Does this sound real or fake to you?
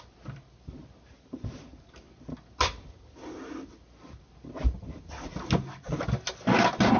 real